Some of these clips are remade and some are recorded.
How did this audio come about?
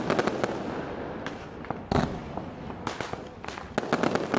recorded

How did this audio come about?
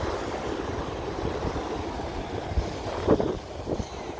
recorded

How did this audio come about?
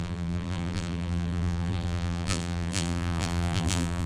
remade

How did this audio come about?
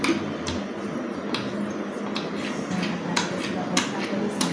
recorded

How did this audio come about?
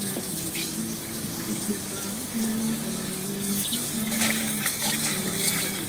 remade